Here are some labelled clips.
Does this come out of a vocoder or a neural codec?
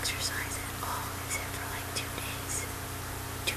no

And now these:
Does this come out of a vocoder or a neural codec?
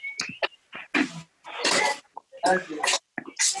no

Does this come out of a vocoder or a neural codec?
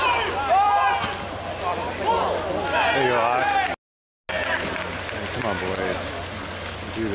no